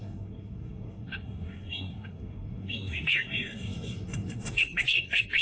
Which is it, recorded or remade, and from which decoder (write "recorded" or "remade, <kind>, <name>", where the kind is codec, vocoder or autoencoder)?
remade, codec, SNAC